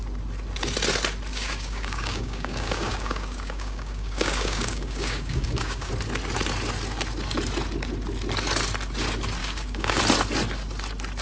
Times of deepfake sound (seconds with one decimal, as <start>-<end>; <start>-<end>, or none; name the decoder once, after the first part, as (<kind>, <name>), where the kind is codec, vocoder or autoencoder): 1.3-5.9 (codec, DAC); 9.4-10.0